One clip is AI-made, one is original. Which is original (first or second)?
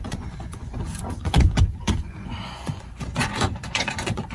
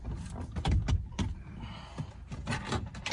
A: second